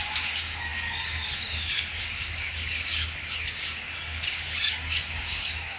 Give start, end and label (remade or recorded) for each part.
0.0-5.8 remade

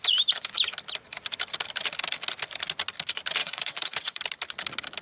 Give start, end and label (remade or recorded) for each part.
0.0-3.4 recorded; 3.4-4.2 remade; 4.2-5.0 recorded